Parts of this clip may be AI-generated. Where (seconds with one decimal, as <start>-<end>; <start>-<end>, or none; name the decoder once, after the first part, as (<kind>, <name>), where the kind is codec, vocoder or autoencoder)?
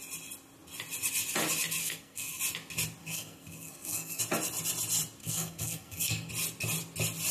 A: 1.8-2.4 (codec, SNAC); 3.0-4.2; 5.2-6.3